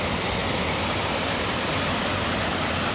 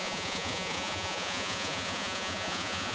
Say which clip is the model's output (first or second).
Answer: second